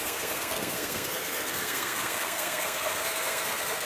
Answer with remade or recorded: remade